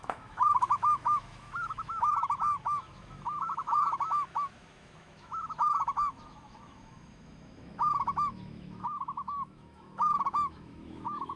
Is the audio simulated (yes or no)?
yes